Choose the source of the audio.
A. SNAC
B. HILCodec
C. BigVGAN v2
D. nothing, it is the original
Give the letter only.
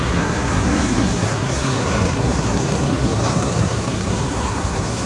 A